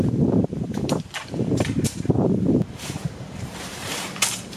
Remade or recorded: remade